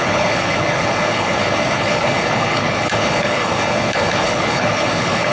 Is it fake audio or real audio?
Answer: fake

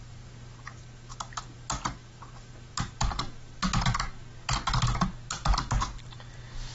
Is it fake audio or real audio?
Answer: real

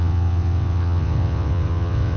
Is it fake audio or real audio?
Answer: fake